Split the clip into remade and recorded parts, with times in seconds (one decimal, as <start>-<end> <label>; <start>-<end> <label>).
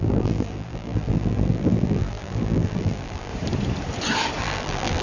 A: 0.0-3.3 remade; 3.3-4.4 recorded; 4.4-5.0 remade